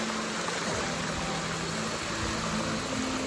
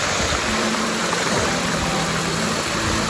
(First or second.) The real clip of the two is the first